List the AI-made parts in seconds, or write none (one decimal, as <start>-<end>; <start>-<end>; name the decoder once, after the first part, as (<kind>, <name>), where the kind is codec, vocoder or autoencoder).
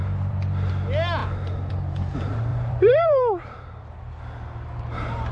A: 0.0-0.7 (vocoder, BigVGAN v2); 1.2-1.7; 2.5-4.0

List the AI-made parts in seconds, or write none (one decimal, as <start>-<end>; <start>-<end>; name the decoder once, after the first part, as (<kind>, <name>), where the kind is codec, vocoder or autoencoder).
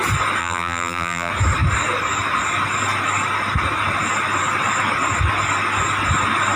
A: 0.4-1.3 (vocoder, BigVGAN v2)